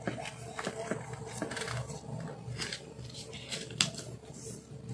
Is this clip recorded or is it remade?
recorded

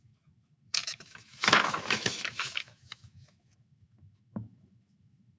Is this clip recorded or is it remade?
remade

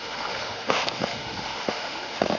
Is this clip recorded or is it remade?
remade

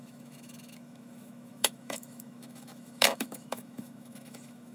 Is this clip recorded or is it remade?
remade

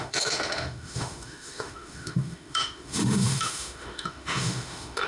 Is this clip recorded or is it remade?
remade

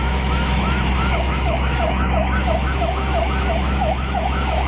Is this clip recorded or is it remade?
remade